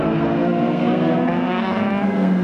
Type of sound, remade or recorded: remade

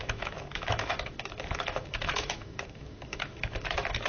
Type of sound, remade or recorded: remade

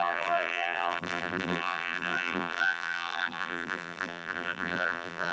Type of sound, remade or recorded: remade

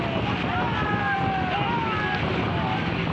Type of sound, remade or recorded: recorded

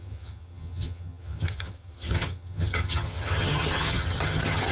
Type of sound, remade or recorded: remade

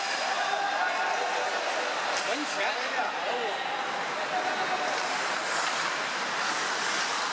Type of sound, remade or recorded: recorded